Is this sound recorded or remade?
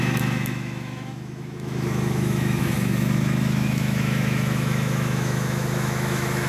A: remade